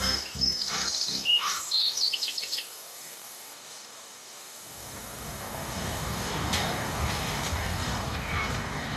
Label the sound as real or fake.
fake